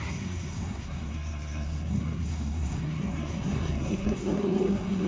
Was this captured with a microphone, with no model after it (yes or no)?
no